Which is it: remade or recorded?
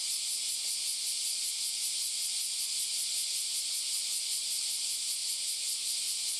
recorded